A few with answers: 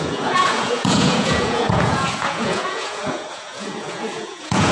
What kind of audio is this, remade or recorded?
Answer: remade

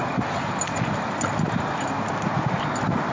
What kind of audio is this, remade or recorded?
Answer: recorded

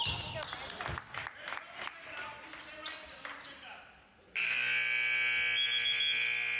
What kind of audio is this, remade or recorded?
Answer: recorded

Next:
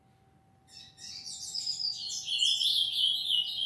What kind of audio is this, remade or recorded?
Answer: recorded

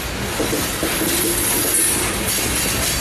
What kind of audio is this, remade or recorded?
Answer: recorded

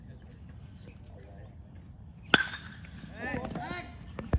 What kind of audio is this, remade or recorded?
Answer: recorded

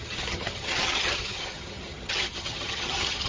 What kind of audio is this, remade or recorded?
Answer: remade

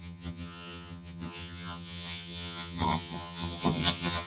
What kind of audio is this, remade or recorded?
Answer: remade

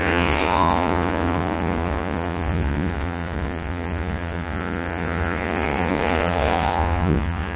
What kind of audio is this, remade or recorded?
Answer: remade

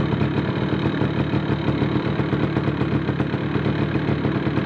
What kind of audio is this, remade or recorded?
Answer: recorded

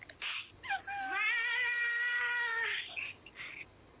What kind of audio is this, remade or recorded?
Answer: recorded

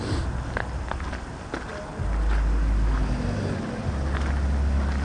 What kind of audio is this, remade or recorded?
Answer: recorded